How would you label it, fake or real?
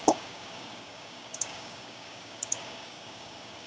fake